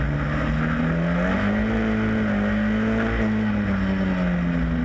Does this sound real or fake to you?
real